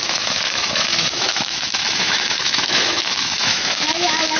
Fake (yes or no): yes